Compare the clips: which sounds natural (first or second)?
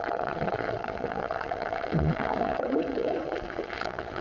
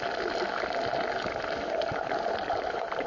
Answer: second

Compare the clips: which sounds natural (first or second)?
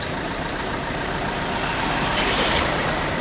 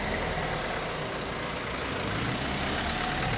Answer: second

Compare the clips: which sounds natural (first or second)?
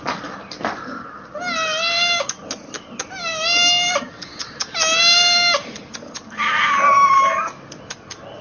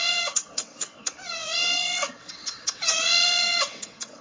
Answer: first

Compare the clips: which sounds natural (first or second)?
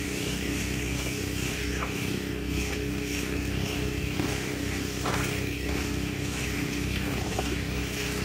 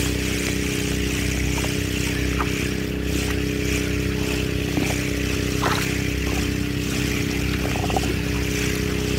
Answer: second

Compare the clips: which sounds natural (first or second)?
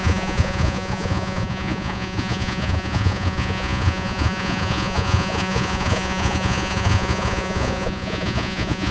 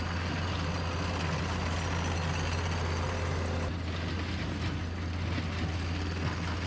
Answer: second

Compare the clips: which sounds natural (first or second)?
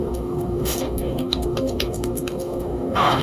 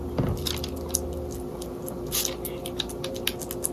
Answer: second